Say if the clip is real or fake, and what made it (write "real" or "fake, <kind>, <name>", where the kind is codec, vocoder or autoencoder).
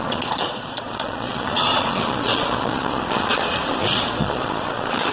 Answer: fake, vocoder, Vocos